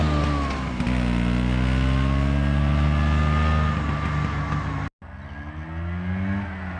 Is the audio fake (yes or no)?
no